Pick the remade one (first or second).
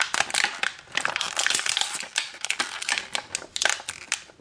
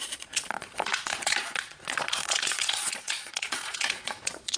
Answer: second